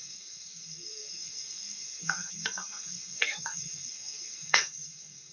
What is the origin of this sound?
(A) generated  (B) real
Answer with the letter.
A